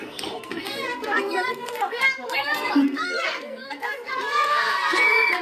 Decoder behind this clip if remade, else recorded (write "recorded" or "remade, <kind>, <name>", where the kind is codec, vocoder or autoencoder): remade, codec, SNAC